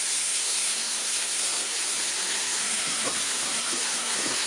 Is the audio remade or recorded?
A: remade